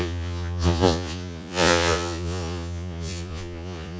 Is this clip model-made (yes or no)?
yes